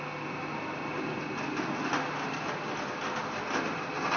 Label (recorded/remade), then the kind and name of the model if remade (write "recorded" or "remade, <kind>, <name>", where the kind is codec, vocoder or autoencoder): recorded